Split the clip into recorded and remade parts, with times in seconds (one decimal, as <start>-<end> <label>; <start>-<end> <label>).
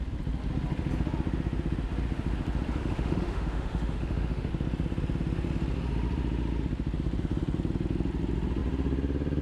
0.0-2.8 recorded; 2.8-4.5 remade; 4.5-9.4 recorded